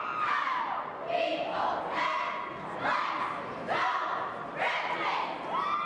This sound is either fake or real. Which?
real